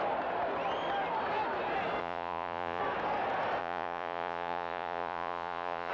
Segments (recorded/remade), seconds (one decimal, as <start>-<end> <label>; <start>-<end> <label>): 0.0-2.0 recorded; 2.0-2.8 remade; 2.8-3.6 recorded; 3.6-5.9 remade

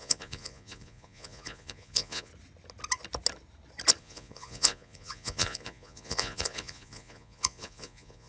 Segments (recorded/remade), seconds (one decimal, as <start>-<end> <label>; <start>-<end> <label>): 0.0-2.3 remade; 2.3-4.0 recorded; 4.0-8.3 remade

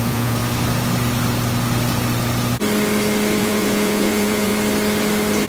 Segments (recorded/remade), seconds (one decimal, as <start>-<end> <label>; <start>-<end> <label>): 0.0-0.4 remade; 0.4-3.4 recorded; 3.4-4.5 remade; 4.5-5.5 recorded

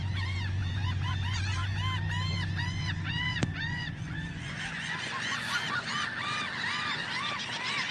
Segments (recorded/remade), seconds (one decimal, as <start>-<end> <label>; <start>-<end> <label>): 0.0-1.6 remade; 1.6-2.3 recorded; 2.3-7.9 remade